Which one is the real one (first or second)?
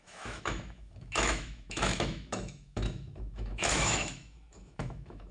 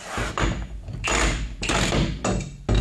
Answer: second